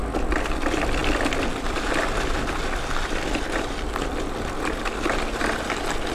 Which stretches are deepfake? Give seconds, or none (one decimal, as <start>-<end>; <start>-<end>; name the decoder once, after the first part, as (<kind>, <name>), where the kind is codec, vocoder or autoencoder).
none